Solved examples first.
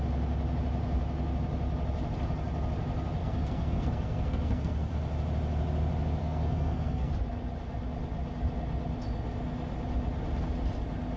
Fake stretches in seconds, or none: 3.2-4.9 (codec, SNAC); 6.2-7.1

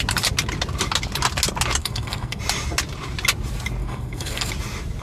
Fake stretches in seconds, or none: 1.8-2.4 (codec, SNAC); 3.8-4.5

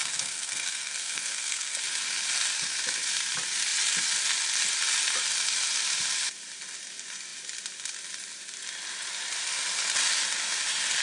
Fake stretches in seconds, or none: 0.0-1.7 (codec, SNAC)